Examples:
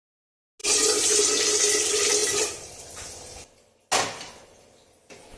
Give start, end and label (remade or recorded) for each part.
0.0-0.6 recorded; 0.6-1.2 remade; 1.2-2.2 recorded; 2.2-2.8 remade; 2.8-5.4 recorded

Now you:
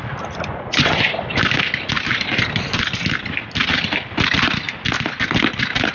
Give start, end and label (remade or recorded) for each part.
0.0-0.5 recorded; 0.5-1.1 remade; 1.1-5.9 recorded

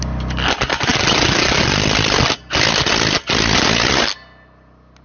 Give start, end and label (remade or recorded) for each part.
0.0-5.0 recorded

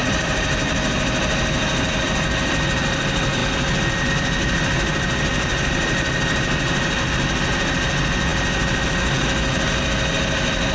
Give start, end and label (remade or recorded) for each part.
0.0-10.7 recorded

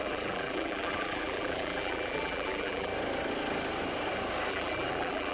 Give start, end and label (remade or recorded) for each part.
0.0-2.9 remade; 2.9-4.5 recorded; 4.5-5.3 remade

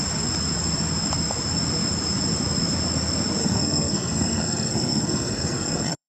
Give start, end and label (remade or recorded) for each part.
0.0-3.4 recorded; 3.4-6.1 remade

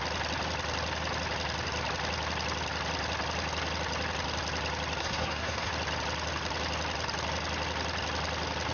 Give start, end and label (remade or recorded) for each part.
0.0-5.0 recorded; 5.0-5.7 remade; 5.7-8.7 recorded

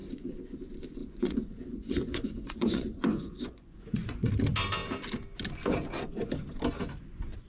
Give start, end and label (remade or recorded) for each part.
0.0-0.6 remade; 0.6-1.0 recorded; 1.0-4.3 remade; 4.3-7.5 recorded